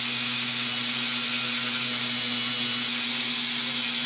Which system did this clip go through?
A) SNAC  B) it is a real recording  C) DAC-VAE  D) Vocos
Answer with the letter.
B